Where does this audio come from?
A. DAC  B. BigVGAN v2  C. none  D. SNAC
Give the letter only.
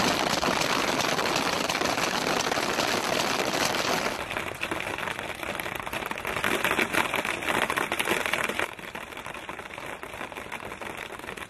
C